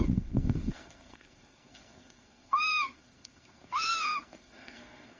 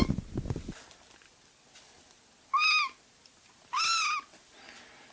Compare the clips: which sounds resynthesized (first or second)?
first